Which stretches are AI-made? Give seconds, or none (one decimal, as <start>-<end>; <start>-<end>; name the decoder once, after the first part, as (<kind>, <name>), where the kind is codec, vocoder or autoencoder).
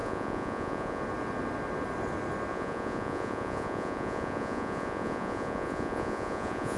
0.0-1.0 (vocoder, Vocos); 2.5-6.8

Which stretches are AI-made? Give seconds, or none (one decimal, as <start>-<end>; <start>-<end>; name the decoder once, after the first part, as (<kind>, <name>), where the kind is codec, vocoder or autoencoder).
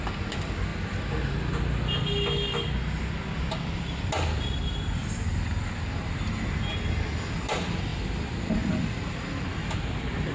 7.9-9.1 (vocoder, BigVGAN v2)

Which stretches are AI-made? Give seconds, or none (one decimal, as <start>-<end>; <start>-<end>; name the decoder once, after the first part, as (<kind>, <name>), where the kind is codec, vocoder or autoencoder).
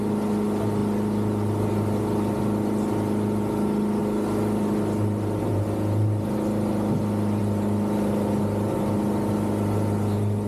none